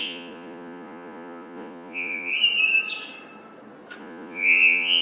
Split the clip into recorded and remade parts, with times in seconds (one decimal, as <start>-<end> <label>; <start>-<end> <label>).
0.0-2.3 remade; 2.3-4.0 recorded; 4.0-5.0 remade